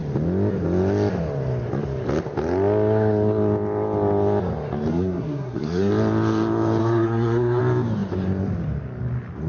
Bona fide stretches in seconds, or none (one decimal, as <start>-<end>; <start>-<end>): 0.0-4.9; 5.9-6.8; 7.6-9.5